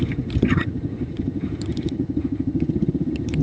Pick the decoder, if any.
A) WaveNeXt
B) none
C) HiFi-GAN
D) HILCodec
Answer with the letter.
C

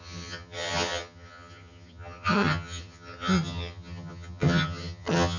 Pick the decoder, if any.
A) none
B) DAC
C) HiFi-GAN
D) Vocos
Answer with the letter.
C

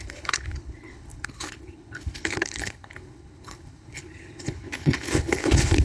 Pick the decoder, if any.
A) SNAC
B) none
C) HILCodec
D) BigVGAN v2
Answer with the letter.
C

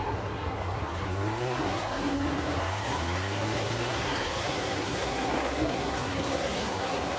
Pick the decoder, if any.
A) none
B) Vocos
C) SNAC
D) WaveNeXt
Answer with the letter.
C